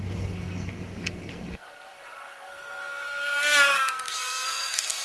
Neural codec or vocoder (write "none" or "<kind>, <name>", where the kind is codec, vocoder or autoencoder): codec, SNAC